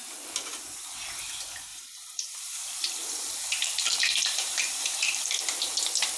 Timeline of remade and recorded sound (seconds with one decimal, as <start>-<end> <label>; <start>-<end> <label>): 0.0-1.7 recorded; 1.7-5.4 remade; 5.4-6.2 recorded